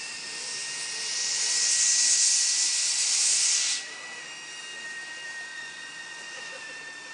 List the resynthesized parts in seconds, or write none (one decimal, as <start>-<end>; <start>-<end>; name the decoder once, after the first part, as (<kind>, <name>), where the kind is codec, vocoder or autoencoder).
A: 5.5-6.6 (vocoder, Vocos)